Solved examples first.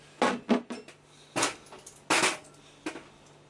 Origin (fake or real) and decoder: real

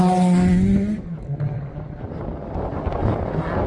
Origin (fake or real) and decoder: real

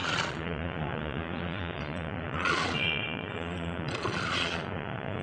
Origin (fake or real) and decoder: fake, vocoder, Vocos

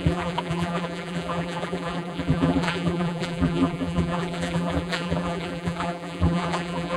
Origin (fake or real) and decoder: fake, vocoder, BigVGAN v2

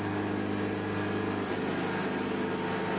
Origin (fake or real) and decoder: real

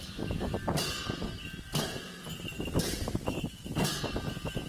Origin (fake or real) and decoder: real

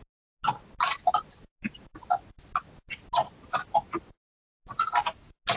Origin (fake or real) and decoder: real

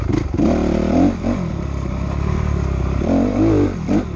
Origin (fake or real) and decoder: real